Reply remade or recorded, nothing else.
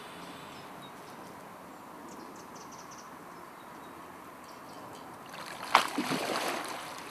recorded